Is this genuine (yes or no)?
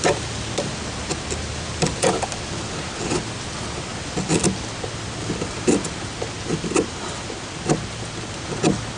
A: yes